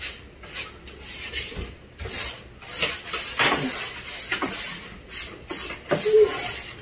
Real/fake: real